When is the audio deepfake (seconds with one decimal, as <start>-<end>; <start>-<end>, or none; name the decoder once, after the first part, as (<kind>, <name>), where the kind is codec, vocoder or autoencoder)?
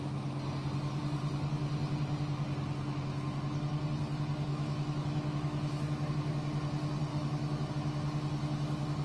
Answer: 4.5-6.1 (autoencoder, DAC-VAE); 7.1-7.7